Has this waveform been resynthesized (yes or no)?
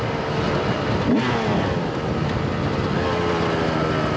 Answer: no